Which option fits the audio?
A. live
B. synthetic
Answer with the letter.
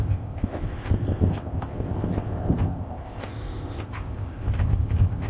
B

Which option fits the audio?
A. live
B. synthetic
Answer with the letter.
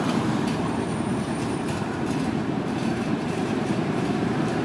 B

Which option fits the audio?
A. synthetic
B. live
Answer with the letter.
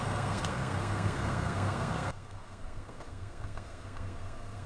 A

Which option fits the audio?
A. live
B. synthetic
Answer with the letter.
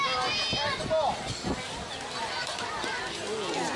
A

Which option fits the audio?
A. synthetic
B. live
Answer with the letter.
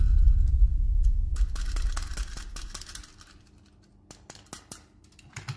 B